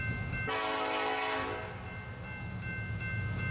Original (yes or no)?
yes